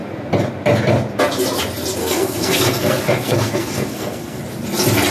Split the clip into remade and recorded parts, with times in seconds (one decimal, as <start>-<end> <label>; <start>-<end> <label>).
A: 0.0-2.0 recorded; 2.0-4.4 remade; 4.4-5.1 recorded